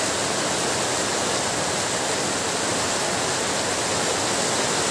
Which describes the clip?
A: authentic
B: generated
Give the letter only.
A